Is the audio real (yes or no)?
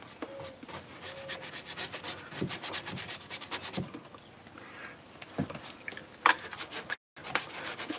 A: yes